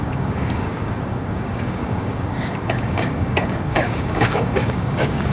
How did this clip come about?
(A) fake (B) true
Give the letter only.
A